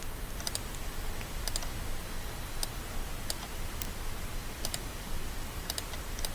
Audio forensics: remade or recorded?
recorded